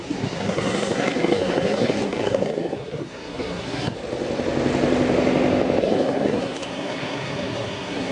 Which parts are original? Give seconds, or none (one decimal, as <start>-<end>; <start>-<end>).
4.0-5.8